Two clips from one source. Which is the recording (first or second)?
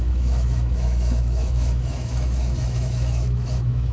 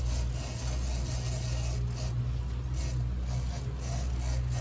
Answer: second